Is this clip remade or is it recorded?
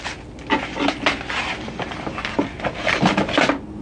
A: recorded